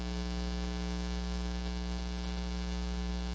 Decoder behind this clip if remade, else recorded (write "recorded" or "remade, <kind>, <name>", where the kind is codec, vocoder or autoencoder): remade, codec, DAC